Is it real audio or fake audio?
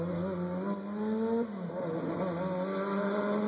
real